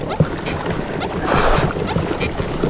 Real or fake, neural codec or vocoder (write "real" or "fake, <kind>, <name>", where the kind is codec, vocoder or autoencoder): real